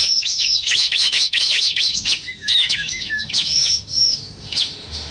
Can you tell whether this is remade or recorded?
remade